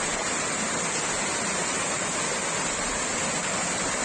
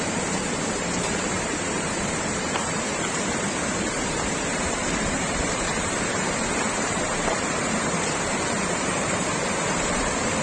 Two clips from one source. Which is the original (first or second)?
first